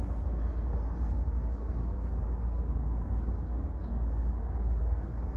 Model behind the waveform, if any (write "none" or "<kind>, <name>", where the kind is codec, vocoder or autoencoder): codec, SNAC